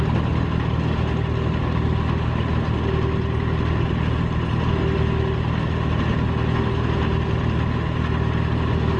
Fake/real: real